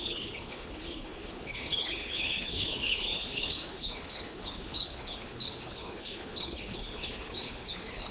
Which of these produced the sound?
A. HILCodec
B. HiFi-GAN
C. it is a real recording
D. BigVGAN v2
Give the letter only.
A